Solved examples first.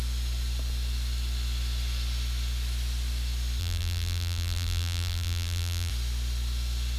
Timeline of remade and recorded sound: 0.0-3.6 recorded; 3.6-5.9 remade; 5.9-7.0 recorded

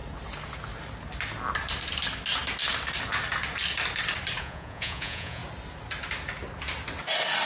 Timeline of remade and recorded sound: 0.0-4.4 recorded; 4.4-5.4 remade; 5.4-7.5 recorded